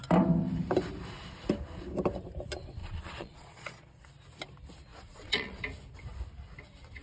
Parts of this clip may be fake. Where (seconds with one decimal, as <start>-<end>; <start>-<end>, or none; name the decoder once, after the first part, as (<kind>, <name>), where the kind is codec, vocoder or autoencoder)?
2.8-4.1 (vocoder, Vocos); 4.9-5.6